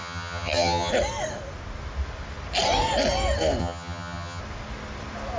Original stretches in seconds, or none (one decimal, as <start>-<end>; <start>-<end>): 0.9-3.6; 4.4-5.4